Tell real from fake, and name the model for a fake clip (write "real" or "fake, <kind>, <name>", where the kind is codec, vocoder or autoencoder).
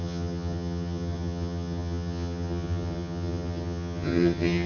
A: fake, vocoder, HiFi-GAN